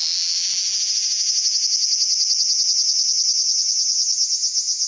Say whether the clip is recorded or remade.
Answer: recorded